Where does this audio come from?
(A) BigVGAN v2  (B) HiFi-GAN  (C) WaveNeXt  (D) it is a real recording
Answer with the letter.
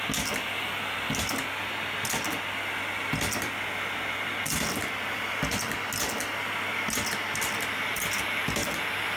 D